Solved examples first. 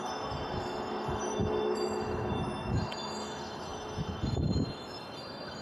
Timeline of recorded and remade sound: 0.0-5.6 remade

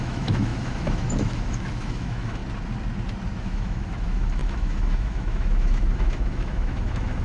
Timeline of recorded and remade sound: 0.0-2.4 remade; 2.4-3.4 recorded; 3.4-7.2 remade